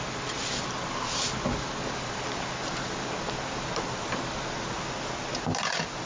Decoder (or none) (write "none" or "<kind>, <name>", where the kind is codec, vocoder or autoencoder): none